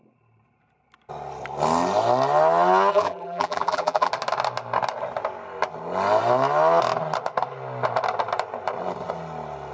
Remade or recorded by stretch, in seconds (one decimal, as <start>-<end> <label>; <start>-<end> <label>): 0.0-2.9 recorded; 2.9-4.1 remade; 4.1-9.7 recorded